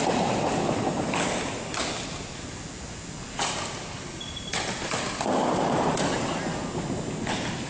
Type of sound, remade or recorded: recorded